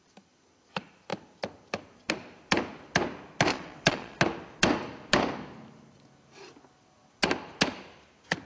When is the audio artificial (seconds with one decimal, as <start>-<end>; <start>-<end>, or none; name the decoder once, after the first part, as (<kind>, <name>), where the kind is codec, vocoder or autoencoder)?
3.5-4.2 (vocoder, WaveNeXt)